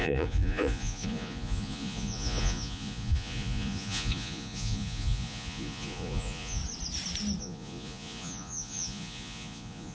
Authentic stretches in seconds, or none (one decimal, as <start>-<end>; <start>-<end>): 6.6-7.4